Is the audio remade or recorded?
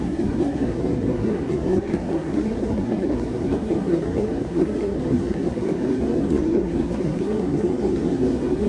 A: remade